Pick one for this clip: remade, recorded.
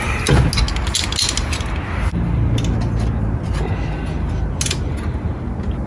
recorded